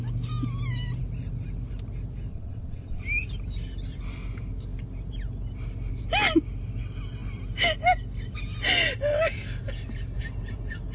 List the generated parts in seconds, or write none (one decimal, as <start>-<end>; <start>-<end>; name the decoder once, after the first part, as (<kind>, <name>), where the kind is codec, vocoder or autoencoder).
2.3-3.0 (vocoder, WaveNeXt)